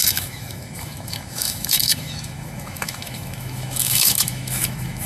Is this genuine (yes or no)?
no